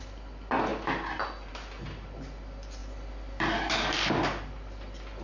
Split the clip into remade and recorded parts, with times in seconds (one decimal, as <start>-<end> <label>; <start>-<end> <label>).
0.0-5.2 recorded